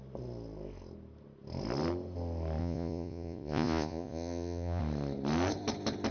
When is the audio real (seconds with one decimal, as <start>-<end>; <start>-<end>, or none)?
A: 0.0-2.6; 4.8-6.1